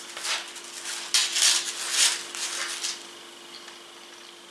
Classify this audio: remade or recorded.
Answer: recorded